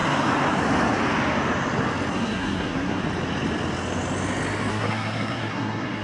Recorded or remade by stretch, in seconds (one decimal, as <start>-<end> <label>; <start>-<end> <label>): 0.0-2.1 recorded; 2.1-3.0 remade; 3.0-4.7 recorded; 4.7-6.0 remade